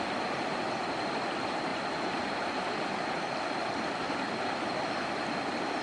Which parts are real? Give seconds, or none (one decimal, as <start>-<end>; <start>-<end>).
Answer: 0.0-5.8